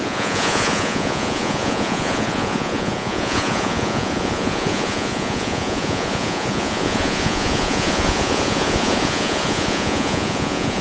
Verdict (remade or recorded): remade